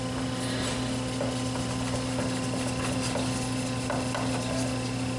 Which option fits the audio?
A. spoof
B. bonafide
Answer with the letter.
B